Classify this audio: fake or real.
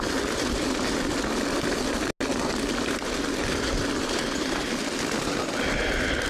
real